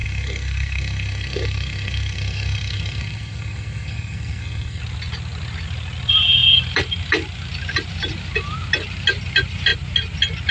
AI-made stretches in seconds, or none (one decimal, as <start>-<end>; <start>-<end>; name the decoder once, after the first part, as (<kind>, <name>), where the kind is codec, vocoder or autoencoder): 0.0-4.8 (codec, SNAC)